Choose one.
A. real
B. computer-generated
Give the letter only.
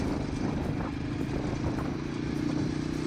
A